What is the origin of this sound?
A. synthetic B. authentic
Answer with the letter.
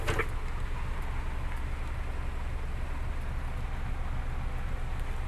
B